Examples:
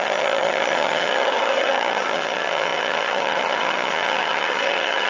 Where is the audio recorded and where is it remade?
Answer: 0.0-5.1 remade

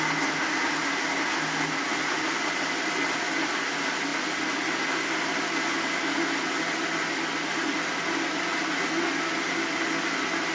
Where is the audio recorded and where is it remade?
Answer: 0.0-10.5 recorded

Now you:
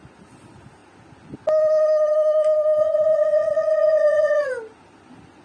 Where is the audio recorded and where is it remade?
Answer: 0.0-2.8 recorded; 2.8-4.5 remade; 4.5-5.4 recorded

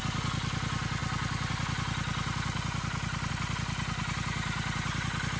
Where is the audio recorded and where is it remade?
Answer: 0.0-5.4 recorded

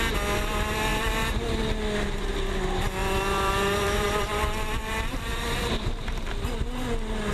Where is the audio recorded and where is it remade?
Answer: 0.0-0.9 recorded; 0.9-1.6 remade; 1.6-3.0 recorded; 3.0-6.2 remade; 6.2-7.3 recorded

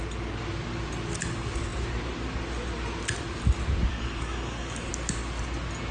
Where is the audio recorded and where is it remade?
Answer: 0.0-3.9 recorded; 3.9-4.9 remade; 4.9-5.9 recorded

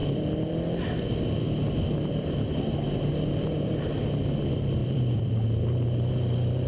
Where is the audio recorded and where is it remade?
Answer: 0.0-4.8 recorded; 4.8-5.3 remade; 5.3-6.7 recorded

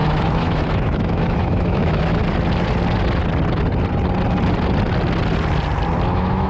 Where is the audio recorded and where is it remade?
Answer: 0.0-2.2 remade; 2.2-6.1 recorded; 6.1-6.5 remade